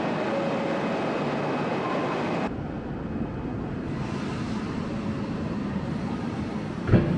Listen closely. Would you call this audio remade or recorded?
recorded